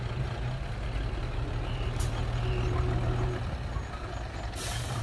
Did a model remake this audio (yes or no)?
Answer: no